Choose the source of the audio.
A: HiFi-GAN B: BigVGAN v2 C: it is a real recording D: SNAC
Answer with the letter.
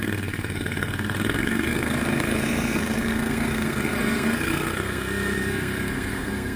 D